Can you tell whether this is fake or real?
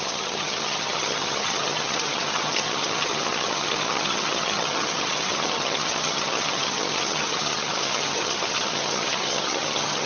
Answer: fake